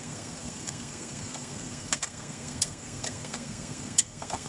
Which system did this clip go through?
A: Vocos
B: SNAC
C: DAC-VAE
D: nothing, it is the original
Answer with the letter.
B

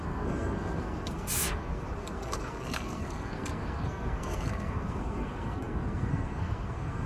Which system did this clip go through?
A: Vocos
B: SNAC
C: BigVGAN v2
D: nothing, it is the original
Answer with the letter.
B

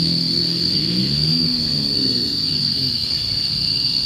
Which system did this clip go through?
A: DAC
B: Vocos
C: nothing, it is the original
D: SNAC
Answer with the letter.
D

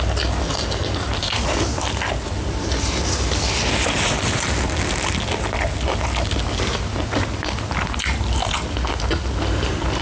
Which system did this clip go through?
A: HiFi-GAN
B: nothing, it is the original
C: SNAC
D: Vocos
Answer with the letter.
B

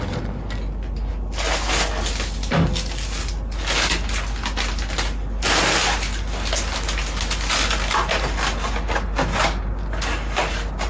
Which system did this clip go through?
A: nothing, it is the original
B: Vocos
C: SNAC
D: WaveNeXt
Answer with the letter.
A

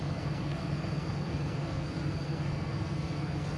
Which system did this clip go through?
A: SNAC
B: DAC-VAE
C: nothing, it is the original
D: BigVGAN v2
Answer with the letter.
A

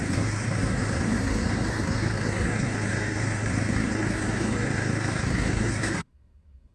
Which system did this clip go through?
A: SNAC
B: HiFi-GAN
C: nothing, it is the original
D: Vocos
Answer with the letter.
A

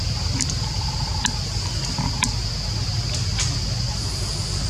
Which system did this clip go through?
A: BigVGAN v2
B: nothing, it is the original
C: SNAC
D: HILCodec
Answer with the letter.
B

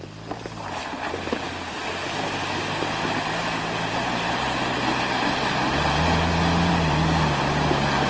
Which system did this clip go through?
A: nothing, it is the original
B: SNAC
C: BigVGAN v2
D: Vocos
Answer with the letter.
A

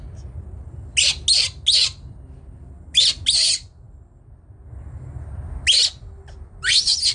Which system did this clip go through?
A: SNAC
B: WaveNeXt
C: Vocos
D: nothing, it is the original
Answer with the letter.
D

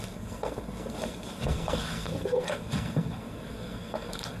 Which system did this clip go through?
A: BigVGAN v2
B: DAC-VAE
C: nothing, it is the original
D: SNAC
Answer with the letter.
D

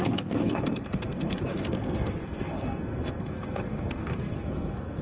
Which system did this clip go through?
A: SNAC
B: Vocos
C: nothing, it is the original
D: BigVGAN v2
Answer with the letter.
A